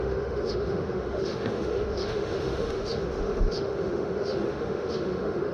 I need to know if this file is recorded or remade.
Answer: remade